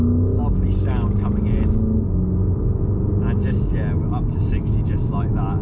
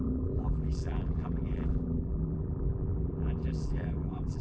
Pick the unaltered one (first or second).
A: first